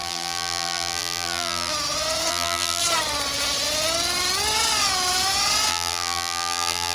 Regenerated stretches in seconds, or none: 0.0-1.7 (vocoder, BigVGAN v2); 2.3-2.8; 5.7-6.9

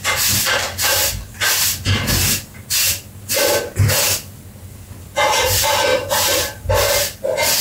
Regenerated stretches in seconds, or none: 5.9-6.7 (vocoder, BigVGAN v2)

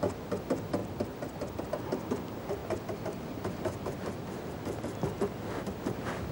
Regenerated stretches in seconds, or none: 0.8-1.7 (vocoder, BigVGAN v2)